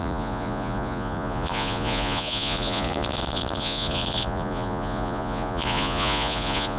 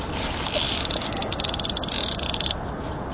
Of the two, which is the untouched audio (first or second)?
second